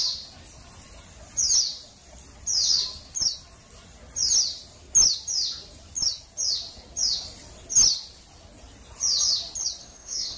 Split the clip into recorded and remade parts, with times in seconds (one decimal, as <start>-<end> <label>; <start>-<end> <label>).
0.0-9.8 recorded; 9.8-10.4 remade

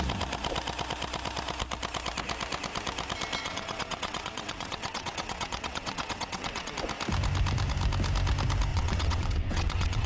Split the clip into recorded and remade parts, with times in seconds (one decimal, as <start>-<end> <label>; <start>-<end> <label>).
0.0-3.4 recorded; 3.4-6.7 remade; 6.7-8.7 recorded; 8.7-10.1 remade

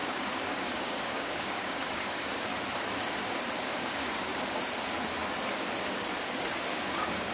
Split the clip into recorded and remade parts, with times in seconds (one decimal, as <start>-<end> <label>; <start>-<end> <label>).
0.0-2.5 remade; 2.5-3.7 recorded; 3.7-4.3 remade; 4.3-6.7 recorded; 6.7-7.3 remade

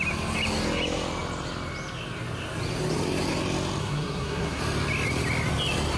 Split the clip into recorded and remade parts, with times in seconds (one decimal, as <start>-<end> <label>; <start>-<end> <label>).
0.0-3.8 recorded; 3.8-4.6 remade; 4.6-6.0 recorded

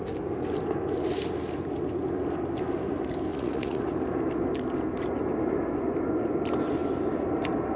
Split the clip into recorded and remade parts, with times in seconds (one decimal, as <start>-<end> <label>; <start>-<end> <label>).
0.0-3.3 recorded; 3.3-3.8 remade; 3.8-7.8 recorded

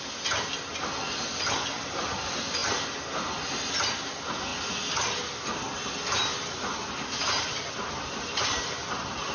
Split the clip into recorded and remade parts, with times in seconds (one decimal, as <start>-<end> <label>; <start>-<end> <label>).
0.0-9.3 recorded

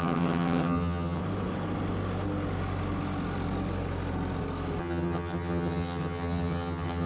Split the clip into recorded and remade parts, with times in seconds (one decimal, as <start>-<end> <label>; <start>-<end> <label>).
0.0-1.2 remade; 1.2-4.8 recorded; 4.8-7.1 remade